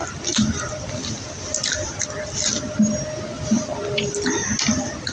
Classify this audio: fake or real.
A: real